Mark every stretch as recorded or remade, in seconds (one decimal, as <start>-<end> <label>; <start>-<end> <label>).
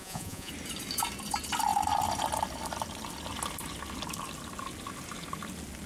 0.0-0.5 remade; 0.5-5.9 recorded